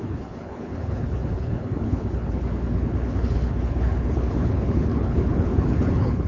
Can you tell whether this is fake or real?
fake